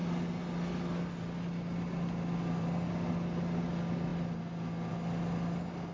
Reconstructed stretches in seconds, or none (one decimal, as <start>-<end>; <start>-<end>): none